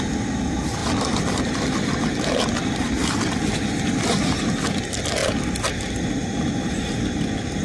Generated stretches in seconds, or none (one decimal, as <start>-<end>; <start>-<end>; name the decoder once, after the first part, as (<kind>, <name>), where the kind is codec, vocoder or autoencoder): 0.8-3.1 (vocoder, BigVGAN v2); 5.2-5.7